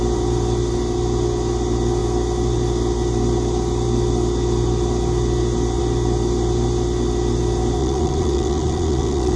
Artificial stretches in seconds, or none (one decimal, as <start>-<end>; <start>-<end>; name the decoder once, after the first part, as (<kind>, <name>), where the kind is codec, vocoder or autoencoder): 7.8-9.4 (vocoder, Vocos)